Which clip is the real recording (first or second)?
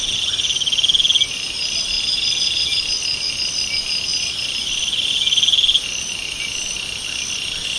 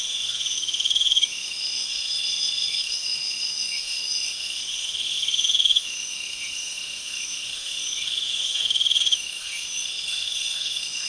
first